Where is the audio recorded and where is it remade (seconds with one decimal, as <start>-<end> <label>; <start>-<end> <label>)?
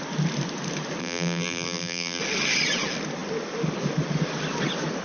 0.0-1.0 recorded; 1.0-2.2 remade; 2.2-5.0 recorded